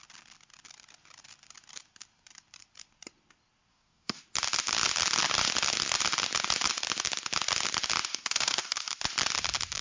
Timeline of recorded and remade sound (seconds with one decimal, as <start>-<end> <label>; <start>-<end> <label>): 0.0-3.7 recorded; 3.7-4.2 remade; 4.2-8.1 recorded; 8.1-8.9 remade; 8.9-9.8 recorded